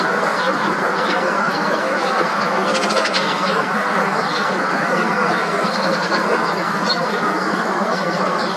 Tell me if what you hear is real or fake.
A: fake